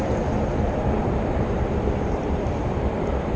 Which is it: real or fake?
fake